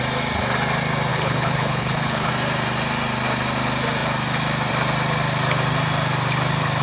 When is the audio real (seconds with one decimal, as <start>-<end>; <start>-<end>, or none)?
0.0-1.1; 2.3-6.8